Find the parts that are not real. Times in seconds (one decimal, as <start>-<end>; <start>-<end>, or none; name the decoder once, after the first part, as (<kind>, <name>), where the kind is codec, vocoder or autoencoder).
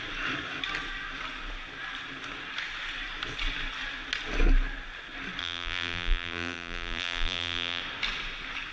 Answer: 5.4-7.8 (vocoder, BigVGAN v2)